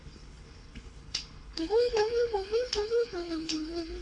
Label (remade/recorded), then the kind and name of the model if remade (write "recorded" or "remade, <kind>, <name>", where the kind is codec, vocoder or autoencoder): remade, codec, HILCodec